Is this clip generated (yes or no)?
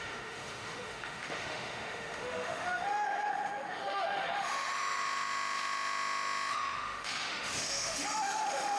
yes